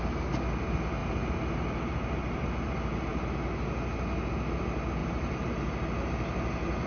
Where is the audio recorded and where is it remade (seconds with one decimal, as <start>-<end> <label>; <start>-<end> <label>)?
0.0-1.0 recorded; 1.0-2.4 remade; 2.4-5.0 recorded; 5.0-5.5 remade; 5.5-6.9 recorded